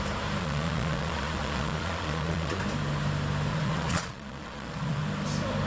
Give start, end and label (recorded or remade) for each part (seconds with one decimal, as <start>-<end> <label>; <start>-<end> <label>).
0.0-0.4 recorded; 0.4-2.6 remade; 2.6-3.5 recorded; 3.5-5.0 remade; 5.0-5.7 recorded